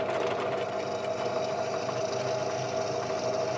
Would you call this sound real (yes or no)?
yes